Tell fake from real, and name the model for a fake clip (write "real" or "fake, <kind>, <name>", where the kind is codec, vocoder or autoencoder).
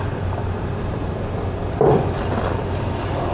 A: real